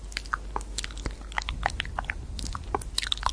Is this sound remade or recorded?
recorded